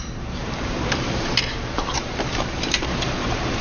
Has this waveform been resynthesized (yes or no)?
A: yes